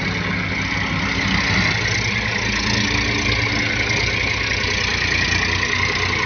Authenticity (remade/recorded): recorded